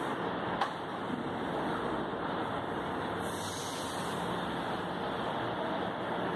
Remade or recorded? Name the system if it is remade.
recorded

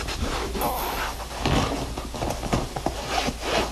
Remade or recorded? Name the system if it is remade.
recorded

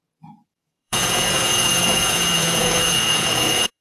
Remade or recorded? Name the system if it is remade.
remade, vocoder, Vocos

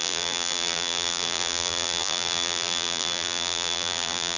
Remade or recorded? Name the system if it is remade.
remade, vocoder, BigVGAN v2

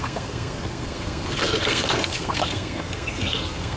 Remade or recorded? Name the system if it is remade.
remade, codec, SNAC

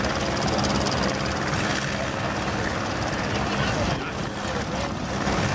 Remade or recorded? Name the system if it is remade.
recorded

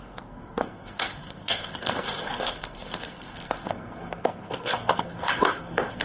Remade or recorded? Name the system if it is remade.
remade, codec, SNAC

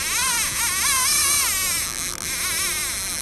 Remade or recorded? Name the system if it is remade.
recorded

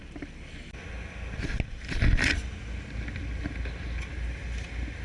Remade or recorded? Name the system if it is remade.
recorded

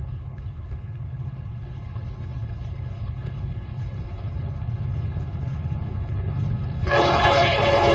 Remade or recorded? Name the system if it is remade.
remade, codec, HILCodec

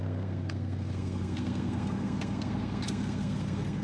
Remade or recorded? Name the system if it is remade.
remade, codec, SNAC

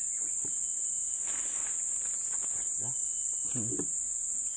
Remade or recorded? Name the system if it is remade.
recorded